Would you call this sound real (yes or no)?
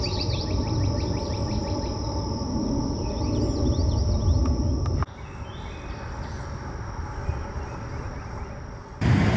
yes